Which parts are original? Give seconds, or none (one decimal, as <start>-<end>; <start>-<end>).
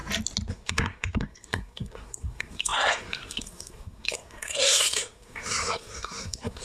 0.0-0.5